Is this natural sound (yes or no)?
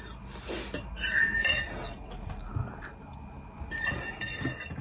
yes